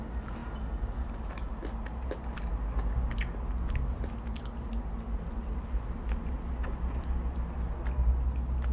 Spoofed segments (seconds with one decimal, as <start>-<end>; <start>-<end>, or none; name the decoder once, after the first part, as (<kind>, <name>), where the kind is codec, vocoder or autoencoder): none